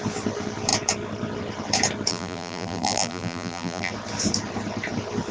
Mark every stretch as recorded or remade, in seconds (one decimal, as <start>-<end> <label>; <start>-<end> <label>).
0.0-2.1 recorded; 2.1-3.9 remade; 3.9-5.3 recorded